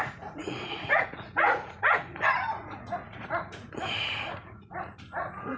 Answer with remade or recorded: remade